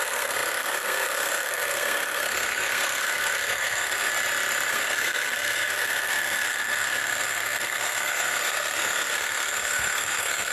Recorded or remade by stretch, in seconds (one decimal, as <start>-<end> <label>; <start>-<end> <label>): 0.0-4.1 remade; 4.1-4.7 recorded; 4.7-10.5 remade